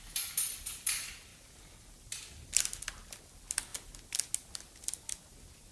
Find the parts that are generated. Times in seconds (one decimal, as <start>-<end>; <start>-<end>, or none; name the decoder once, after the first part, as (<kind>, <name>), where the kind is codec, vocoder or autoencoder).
none